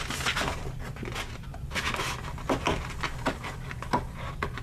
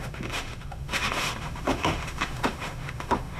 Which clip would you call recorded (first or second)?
first